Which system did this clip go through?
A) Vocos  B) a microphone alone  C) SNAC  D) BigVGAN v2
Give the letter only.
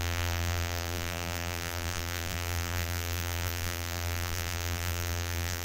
D